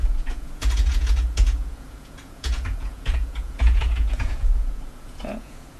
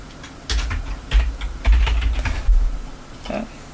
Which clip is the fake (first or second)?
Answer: first